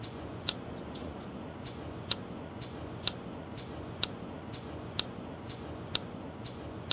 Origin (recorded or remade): remade